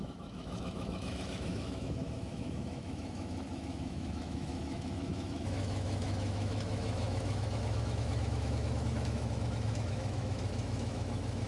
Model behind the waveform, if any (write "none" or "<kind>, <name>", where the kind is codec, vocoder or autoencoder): autoencoder, DAC-VAE